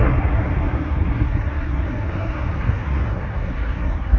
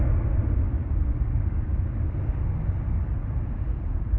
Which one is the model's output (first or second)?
first